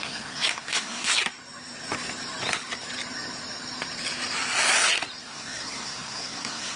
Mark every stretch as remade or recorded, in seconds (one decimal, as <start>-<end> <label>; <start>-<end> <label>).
0.0-1.1 remade; 1.1-5.2 recorded; 5.2-6.8 remade